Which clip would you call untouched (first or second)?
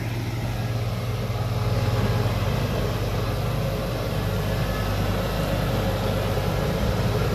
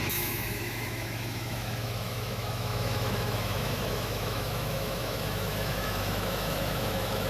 first